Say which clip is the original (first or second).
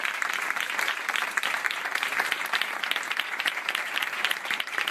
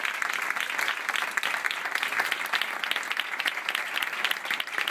second